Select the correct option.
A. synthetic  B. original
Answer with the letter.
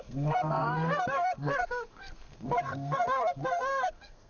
A